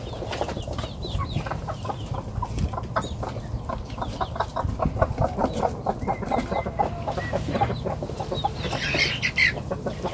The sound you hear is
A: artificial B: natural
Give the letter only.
B